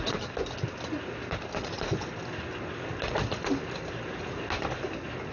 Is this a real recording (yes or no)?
yes